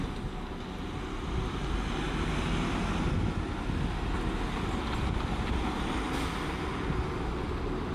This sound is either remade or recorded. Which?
recorded